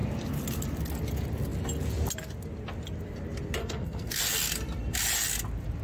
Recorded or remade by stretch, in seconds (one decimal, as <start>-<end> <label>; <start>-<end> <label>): 0.0-3.6 recorded; 3.6-4.2 remade; 4.2-5.8 recorded